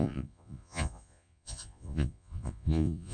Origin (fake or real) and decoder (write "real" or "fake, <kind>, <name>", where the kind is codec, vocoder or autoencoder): fake, vocoder, Vocos